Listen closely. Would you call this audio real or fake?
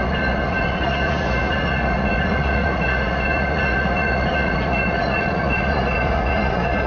fake